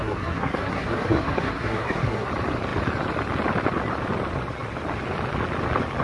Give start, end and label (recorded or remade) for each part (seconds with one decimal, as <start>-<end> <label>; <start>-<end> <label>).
0.0-2.3 remade; 2.3-6.0 recorded